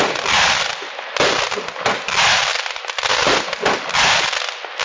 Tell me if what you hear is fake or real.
real